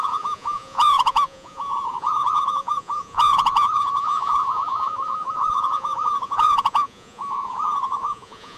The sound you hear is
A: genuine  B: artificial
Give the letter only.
B